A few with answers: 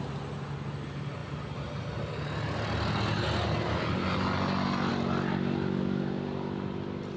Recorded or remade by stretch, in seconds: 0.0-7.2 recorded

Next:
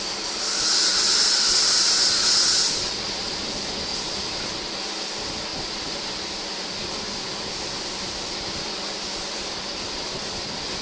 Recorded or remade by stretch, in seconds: 0.0-0.8 recorded; 0.8-1.5 remade; 1.5-3.9 recorded; 3.9-4.5 remade; 4.5-5.5 recorded; 5.5-9.3 remade; 9.3-10.8 recorded

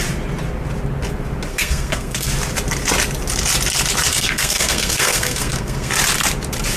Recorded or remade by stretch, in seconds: 0.0-1.5 recorded; 1.5-2.3 remade; 2.3-4.1 recorded; 4.1-5.9 remade; 5.9-6.8 recorded

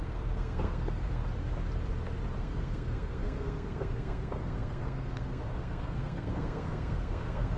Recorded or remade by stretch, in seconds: 0.0-1.2 remade; 1.2-2.4 recorded; 2.4-7.6 remade

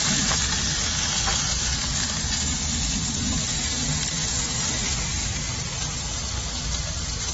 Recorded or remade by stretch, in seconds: 0.0-5.2 recorded; 5.2-5.7 remade; 5.7-7.3 recorded